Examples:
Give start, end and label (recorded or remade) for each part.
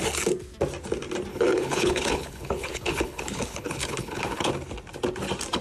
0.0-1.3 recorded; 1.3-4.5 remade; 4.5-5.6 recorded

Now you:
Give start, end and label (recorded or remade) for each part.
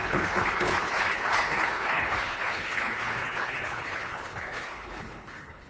0.0-5.7 remade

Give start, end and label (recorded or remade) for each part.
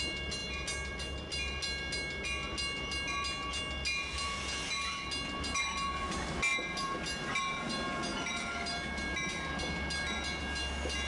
0.0-11.1 recorded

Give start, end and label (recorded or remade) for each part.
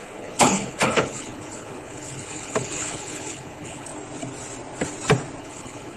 0.0-3.9 remade; 3.9-5.4 recorded; 5.4-6.0 remade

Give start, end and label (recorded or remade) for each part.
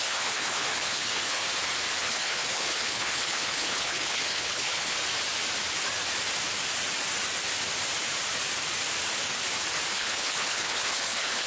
0.0-1.4 remade; 1.4-2.0 recorded; 2.0-5.0 remade; 5.0-9.9 recorded; 9.9-11.5 remade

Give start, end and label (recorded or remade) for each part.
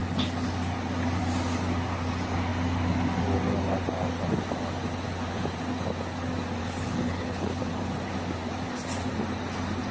0.0-6.6 recorded; 6.6-7.6 remade; 7.6-9.9 recorded